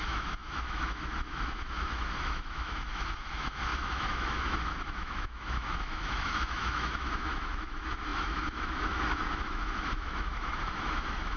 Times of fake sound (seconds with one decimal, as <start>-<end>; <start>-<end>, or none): 0.0-11.4